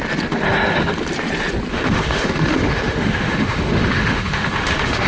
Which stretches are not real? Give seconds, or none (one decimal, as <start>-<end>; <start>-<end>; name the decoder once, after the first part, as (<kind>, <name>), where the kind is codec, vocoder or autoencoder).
1.7-5.1 (autoencoder, DAC-VAE)